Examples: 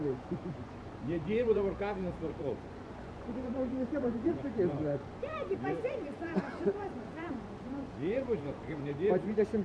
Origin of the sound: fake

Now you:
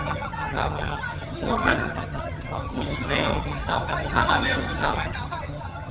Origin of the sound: fake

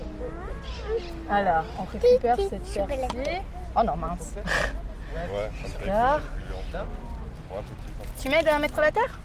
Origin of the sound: real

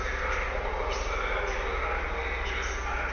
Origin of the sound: real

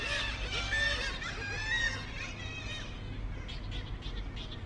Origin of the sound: real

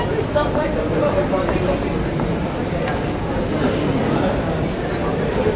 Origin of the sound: real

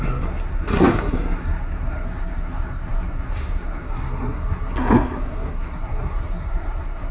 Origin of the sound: fake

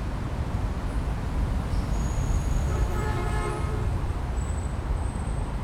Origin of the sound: fake